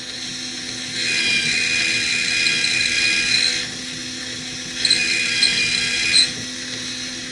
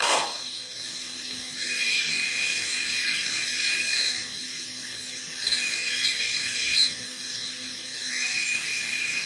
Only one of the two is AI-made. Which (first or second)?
second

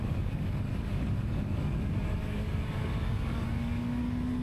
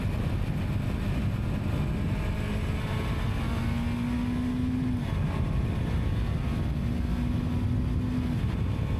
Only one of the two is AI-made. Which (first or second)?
first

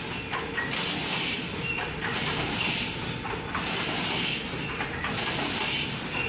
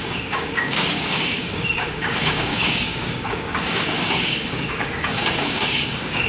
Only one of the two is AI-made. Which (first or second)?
second